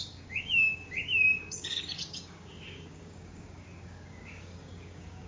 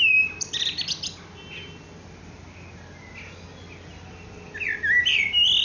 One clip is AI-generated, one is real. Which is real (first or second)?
second